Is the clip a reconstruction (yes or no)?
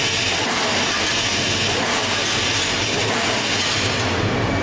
no